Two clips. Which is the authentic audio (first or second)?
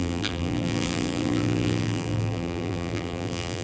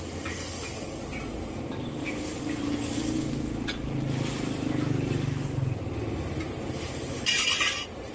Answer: second